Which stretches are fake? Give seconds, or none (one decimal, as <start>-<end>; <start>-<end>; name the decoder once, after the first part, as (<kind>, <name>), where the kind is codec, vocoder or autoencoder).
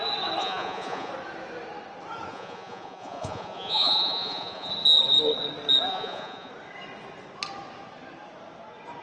0.4-1.1 (vocoder, Vocos); 2.3-4.7; 5.9-6.5